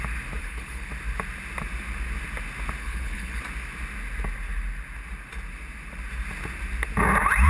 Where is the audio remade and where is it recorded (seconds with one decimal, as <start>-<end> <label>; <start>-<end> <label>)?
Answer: 0.0-0.4 recorded; 0.4-0.9 remade; 0.9-2.8 recorded; 2.8-3.4 remade; 3.4-7.5 recorded